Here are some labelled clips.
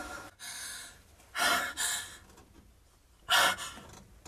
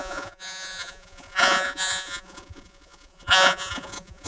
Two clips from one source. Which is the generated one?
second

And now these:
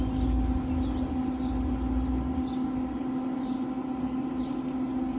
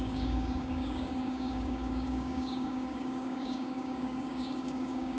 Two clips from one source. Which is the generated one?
second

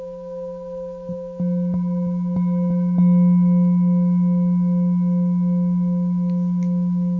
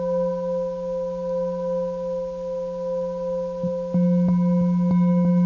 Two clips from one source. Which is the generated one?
first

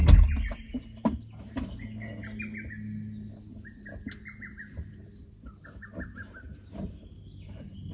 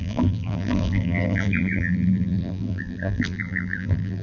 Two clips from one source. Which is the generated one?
second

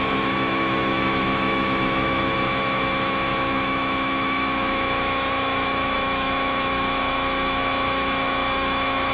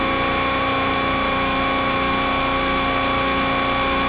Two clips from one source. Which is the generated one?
first